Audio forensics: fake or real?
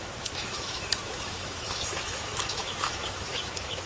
fake